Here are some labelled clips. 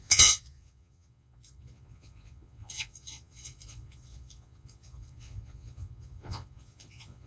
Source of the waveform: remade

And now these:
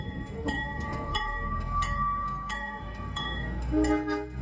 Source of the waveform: remade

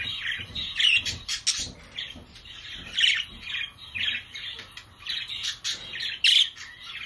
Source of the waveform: recorded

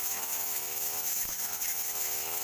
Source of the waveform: remade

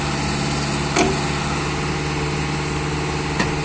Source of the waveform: recorded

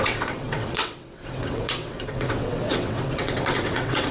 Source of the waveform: remade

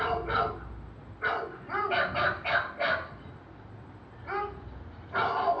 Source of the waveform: recorded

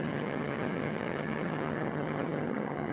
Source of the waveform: remade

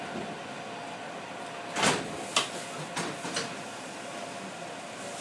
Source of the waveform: recorded